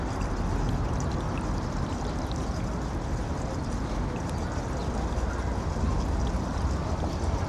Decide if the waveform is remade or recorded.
recorded